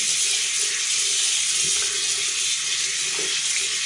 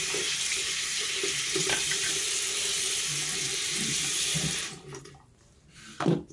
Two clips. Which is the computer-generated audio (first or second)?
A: second